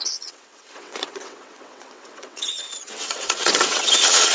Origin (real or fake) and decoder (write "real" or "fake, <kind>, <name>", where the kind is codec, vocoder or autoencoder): fake, vocoder, WaveNeXt